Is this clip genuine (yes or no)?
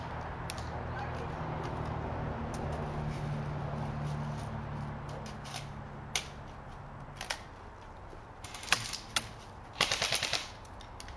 yes